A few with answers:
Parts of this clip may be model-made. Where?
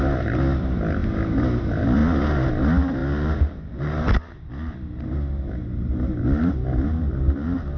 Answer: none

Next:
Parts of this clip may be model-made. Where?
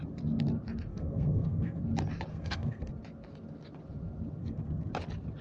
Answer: 0.9-1.8; 2.3-2.9; 4.4-4.9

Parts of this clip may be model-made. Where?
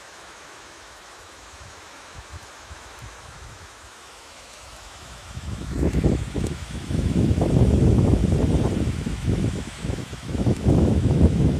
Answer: 0.0-8.2; 8.8-11.6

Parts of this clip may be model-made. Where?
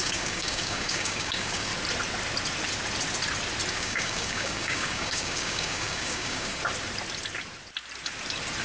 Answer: 0.0-1.7; 3.7-6.6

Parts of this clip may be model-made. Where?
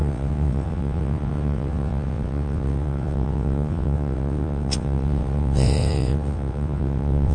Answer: 0.0-7.3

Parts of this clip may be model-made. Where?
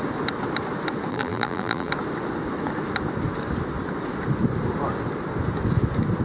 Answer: 1.1-1.9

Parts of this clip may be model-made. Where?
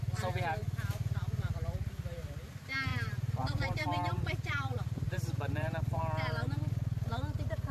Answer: 2.9-6.0